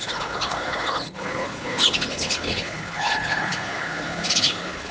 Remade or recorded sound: remade